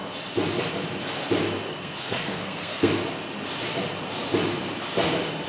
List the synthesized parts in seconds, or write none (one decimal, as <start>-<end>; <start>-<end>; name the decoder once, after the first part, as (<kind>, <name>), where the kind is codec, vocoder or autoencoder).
1.7-2.9 (codec, SNAC)